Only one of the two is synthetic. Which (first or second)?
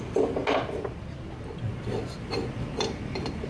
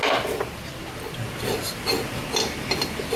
first